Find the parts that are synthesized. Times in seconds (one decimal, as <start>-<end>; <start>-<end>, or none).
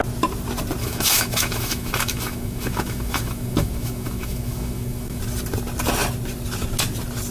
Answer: 0.8-5.2